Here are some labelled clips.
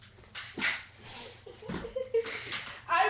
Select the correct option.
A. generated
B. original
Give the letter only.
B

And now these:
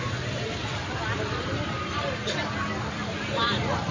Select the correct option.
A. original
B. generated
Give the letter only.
A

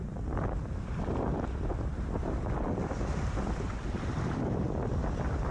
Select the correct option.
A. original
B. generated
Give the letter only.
A